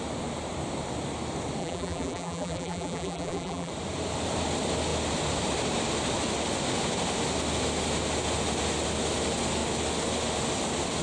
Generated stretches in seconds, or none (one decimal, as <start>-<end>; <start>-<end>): 1.6-3.7

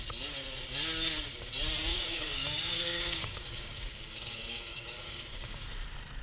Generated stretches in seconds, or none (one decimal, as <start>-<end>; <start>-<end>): 1.9-5.6

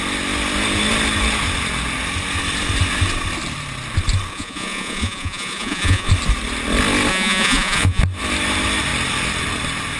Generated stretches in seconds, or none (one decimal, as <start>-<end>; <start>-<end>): 4.3-6.1; 7.1-8.0